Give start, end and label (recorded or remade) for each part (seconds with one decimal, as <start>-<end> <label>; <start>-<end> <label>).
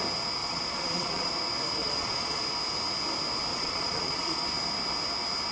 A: 0.0-0.4 recorded; 0.4-1.3 remade; 1.3-1.8 recorded; 1.8-2.4 remade; 2.4-3.5 recorded; 3.5-4.4 remade; 4.4-5.5 recorded